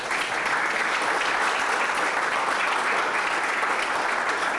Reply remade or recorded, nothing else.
recorded